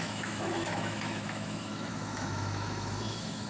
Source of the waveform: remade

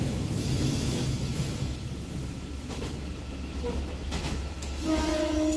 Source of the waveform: remade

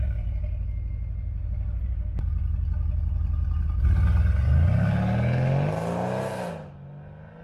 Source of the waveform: recorded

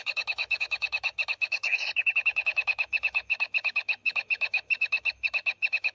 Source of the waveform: remade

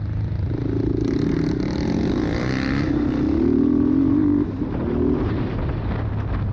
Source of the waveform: recorded